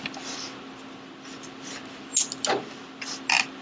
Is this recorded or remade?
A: recorded